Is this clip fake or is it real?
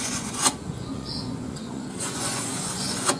fake